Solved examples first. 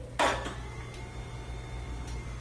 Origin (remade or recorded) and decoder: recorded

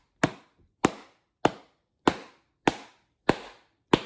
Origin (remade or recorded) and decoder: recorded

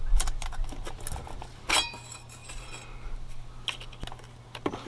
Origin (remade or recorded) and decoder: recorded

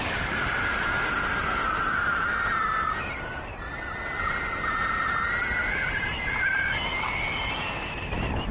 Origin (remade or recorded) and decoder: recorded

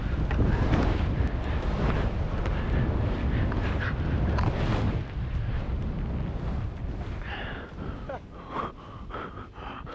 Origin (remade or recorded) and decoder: recorded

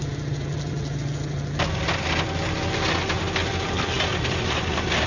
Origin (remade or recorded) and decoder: recorded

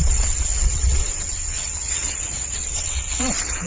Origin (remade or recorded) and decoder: remade, vocoder, WaveNeXt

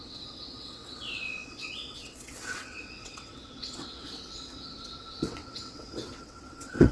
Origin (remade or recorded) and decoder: remade, vocoder, WaveNeXt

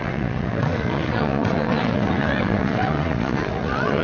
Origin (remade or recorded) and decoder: remade, vocoder, WaveNeXt